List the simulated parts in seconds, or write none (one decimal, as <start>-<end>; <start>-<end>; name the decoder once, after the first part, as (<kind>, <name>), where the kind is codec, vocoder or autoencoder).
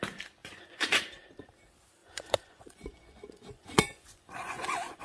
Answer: 0.4-1.0 (vocoder, Vocos); 2.0-5.0